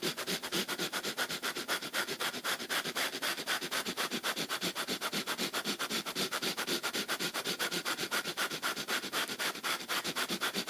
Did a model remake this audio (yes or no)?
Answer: yes